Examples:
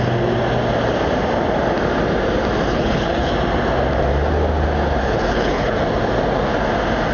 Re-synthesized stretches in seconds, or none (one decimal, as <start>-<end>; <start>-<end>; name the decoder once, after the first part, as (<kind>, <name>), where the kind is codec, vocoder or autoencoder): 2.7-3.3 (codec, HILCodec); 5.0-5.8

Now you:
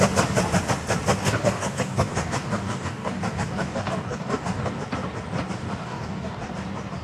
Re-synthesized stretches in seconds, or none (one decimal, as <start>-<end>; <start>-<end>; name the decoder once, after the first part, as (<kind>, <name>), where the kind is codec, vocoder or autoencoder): 1.2-4.7 (codec, DAC); 5.6-6.5

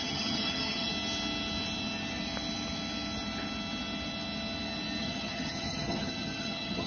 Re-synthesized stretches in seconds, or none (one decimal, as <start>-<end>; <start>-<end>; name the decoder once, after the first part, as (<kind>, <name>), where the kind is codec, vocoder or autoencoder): 0.0-0.9 (vocoder, HiFi-GAN); 5.0-6.9